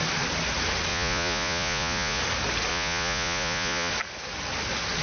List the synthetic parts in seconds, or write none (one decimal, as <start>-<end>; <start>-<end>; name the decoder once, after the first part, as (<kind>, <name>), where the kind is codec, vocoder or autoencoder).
0.9-2.2 (vocoder, Vocos); 2.7-3.9